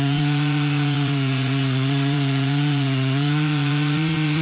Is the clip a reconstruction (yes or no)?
yes